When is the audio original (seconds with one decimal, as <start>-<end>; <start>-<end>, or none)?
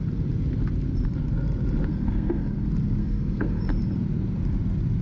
0.0-1.9; 2.5-3.0; 3.6-5.0